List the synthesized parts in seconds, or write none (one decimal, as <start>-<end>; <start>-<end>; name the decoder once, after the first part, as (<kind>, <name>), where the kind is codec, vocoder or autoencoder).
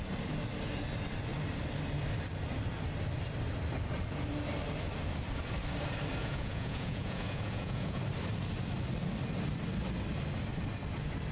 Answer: 6.2-8.0 (vocoder, Vocos)